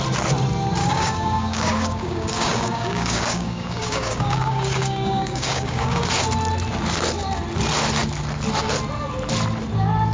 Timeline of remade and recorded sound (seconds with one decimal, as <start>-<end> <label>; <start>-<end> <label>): 0.0-0.8 recorded; 0.8-6.0 remade; 6.0-10.1 recorded